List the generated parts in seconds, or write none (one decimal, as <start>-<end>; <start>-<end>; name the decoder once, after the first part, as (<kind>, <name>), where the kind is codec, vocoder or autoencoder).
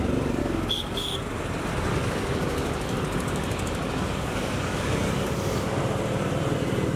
0.4-1.2 (codec, DAC); 1.9-5.8